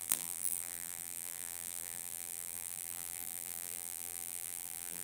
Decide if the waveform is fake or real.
fake